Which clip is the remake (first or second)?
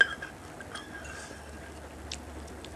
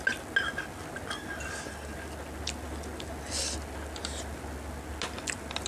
first